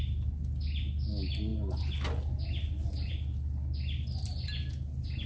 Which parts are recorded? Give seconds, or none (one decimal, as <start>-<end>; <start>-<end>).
0.0-5.3